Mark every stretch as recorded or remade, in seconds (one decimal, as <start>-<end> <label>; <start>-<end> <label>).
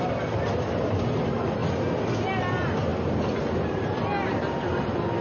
0.0-5.2 recorded